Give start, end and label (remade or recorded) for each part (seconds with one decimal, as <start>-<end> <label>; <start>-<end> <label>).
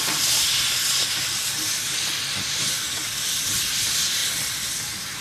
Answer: 0.0-5.2 recorded